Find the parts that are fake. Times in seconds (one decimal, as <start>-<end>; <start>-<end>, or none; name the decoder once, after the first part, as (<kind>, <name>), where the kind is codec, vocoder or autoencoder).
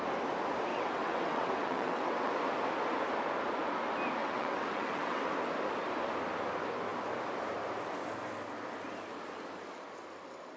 0.7-2.3 (vocoder, WaveNeXt); 4.2-5.3